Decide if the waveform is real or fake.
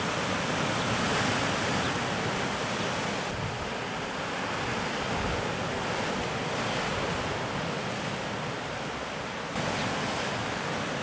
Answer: real